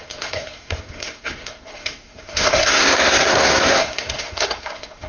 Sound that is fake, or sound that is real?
fake